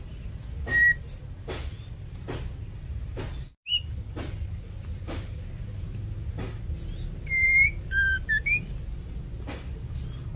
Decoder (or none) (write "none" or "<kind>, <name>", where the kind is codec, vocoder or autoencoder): none